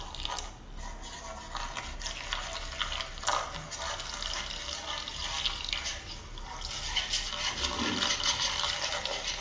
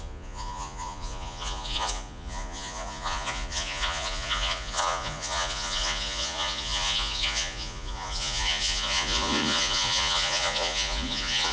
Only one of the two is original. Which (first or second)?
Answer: first